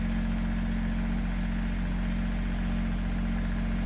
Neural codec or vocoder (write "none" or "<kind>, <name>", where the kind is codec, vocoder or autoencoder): none